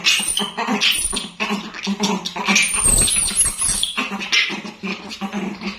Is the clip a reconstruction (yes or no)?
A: no